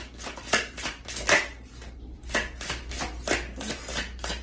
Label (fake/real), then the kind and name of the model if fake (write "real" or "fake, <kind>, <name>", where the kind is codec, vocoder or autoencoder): real